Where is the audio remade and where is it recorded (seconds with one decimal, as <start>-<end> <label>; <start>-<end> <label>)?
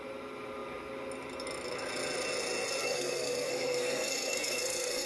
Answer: 0.0-2.8 recorded; 2.8-5.1 remade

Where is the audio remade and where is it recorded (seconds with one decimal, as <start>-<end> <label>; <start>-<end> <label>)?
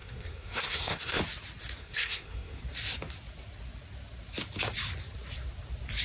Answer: 0.0-1.2 remade; 1.2-1.8 recorded; 1.8-2.6 remade; 2.6-6.0 recorded